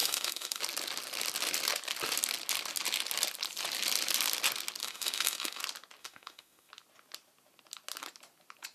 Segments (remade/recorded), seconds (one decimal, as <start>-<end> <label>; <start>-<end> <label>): 0.0-0.6 remade; 0.6-4.8 recorded; 4.8-5.6 remade; 5.6-6.0 recorded; 6.0-6.7 remade; 6.7-8.7 recorded